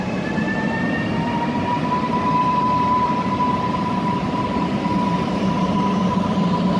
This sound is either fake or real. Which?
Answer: fake